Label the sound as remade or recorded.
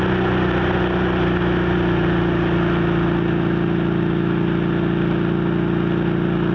recorded